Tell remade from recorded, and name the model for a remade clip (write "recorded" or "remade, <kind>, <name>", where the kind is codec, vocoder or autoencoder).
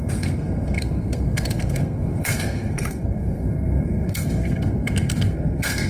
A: remade, codec, SNAC